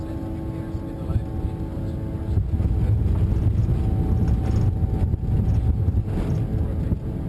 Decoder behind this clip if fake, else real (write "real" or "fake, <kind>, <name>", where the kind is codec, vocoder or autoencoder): real